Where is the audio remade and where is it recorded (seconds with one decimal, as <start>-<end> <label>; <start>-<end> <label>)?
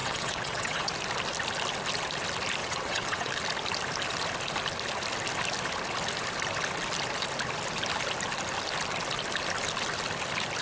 0.0-0.9 remade; 0.9-2.6 recorded; 2.6-3.3 remade; 3.3-10.6 recorded